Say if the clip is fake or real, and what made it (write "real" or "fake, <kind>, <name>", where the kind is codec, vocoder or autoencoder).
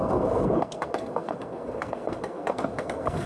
fake, codec, SNAC